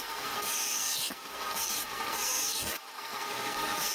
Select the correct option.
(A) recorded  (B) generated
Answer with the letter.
B